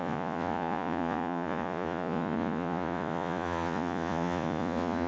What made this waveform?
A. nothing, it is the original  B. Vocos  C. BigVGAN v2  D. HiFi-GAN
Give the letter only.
B